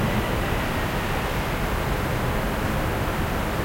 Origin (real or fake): real